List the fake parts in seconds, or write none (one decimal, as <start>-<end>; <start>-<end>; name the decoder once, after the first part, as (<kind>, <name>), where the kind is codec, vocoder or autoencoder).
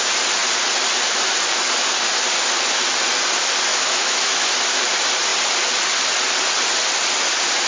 3.7-4.5 (autoencoder, DAC-VAE)